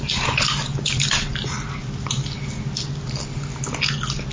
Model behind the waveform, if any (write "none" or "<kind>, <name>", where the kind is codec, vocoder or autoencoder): none